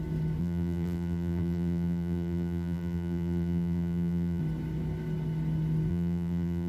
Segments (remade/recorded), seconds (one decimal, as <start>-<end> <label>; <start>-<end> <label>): 0.0-0.4 recorded; 0.4-4.4 remade; 4.4-5.9 recorded; 5.9-6.7 remade